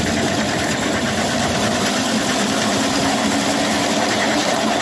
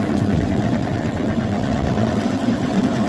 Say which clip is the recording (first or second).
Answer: first